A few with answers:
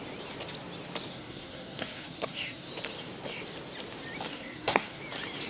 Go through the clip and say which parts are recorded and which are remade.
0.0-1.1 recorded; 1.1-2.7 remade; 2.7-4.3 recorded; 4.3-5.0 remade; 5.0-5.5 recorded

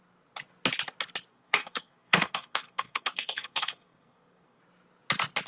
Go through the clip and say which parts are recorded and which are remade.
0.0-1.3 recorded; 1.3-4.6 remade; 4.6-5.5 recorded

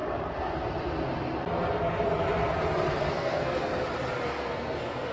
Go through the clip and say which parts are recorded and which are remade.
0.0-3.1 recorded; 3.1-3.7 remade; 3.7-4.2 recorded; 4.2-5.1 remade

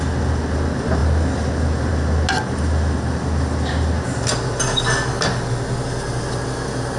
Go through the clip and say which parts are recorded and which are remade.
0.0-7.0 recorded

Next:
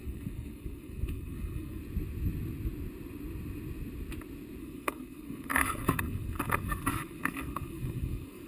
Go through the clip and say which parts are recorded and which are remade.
0.0-1.8 remade; 1.8-4.6 recorded; 4.6-8.5 remade

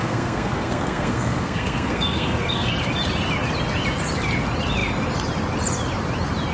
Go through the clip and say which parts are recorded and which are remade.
0.0-2.7 remade; 2.7-6.5 recorded